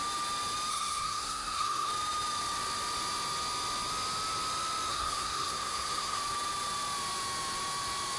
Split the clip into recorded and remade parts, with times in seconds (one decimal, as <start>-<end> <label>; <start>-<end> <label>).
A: 0.0-0.7 recorded; 0.7-1.9 remade; 1.9-4.9 recorded; 4.9-6.2 remade; 6.2-8.2 recorded

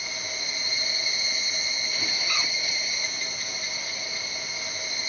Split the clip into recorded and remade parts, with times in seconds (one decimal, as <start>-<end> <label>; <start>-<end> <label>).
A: 0.0-2.1 recorded; 2.1-2.9 remade; 2.9-5.1 recorded

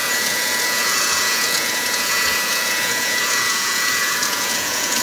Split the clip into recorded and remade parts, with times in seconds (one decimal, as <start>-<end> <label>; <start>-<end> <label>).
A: 0.0-5.0 remade

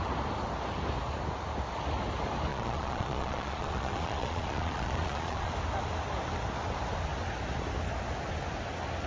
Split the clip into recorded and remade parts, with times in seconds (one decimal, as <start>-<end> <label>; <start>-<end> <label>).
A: 0.0-2.5 recorded; 2.5-5.5 remade; 5.5-9.1 recorded

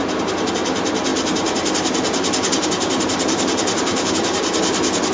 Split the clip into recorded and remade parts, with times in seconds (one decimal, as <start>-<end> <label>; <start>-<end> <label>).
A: 0.0-0.5 remade; 0.5-1.1 recorded; 1.1-4.1 remade; 4.1-5.1 recorded

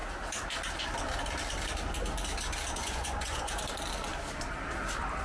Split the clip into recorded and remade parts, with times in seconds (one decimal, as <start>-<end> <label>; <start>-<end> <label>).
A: 0.0-2.8 recorded; 2.8-3.6 remade; 3.6-5.2 recorded

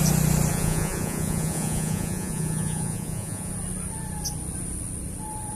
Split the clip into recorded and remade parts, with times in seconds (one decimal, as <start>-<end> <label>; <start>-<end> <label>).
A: 0.0-0.5 recorded; 0.5-3.5 remade; 3.5-5.6 recorded

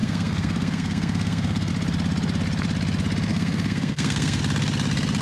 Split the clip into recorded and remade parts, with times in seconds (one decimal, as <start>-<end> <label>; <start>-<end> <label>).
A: 0.0-1.7 remade; 1.7-3.3 recorded; 3.3-4.4 remade; 4.4-5.2 recorded